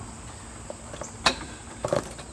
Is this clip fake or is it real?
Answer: real